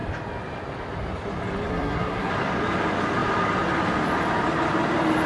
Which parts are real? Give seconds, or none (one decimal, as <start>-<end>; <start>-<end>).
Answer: 0.0-1.7; 2.3-5.3